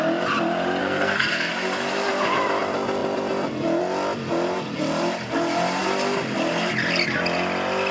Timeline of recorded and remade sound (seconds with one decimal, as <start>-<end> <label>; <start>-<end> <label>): 0.0-0.8 recorded; 0.8-1.5 remade; 1.5-7.9 recorded